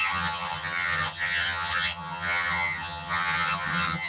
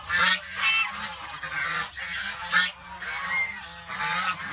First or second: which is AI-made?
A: first